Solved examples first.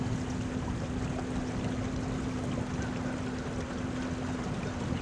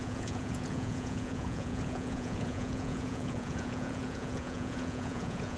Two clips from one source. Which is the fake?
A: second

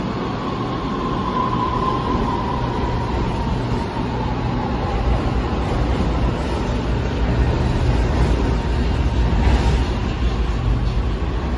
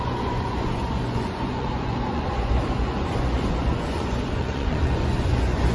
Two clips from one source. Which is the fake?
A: second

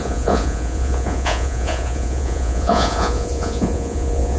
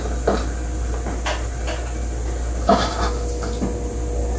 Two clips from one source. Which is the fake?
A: first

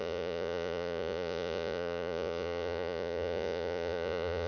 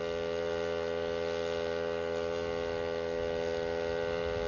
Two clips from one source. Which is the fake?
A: first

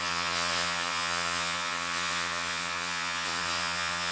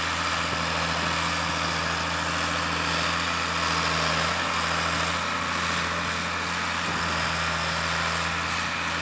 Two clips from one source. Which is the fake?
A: first